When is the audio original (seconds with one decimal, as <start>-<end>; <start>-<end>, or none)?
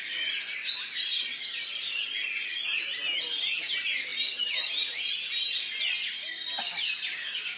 0.0-7.6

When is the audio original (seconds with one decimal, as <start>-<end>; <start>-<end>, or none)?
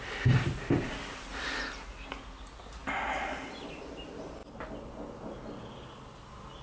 0.0-6.6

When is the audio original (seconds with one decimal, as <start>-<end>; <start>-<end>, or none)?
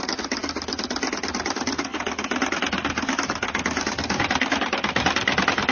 0.0-5.7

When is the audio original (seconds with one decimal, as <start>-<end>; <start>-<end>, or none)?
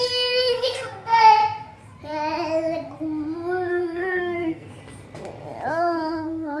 1.4-3.7; 4.7-5.7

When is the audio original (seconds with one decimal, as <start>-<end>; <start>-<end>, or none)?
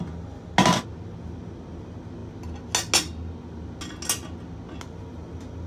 0.0-5.7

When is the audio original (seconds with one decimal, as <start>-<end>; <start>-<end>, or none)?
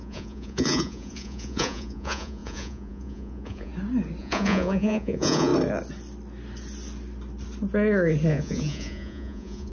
3.7-4.2; 5.5-8.3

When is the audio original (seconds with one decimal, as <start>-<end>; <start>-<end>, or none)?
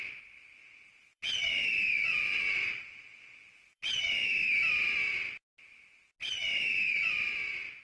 0.0-0.6; 4.5-6.2; 7.2-7.8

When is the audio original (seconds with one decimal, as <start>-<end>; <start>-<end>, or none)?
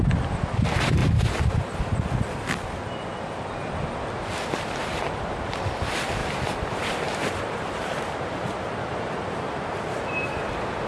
0.0-6.2; 9.7-10.9